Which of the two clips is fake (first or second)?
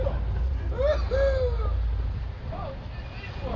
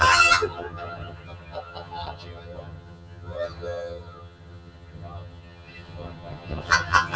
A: second